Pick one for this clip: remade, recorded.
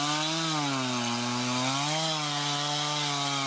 recorded